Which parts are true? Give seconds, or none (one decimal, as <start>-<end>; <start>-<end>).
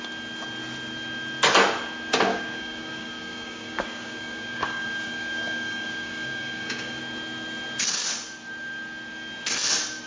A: 0.0-2.3; 7.0-10.1